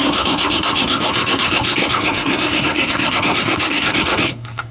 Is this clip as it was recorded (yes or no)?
no